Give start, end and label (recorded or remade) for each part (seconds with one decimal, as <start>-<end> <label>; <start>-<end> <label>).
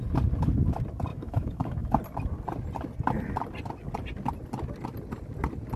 0.0-1.1 recorded; 1.1-2.0 remade; 2.0-5.8 recorded